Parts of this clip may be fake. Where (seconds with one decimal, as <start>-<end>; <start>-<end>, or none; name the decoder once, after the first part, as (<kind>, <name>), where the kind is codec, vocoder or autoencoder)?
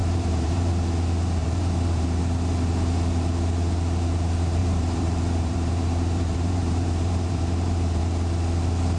0.0-0.7 (vocoder, BigVGAN v2); 1.4-2.2; 4.6-8.0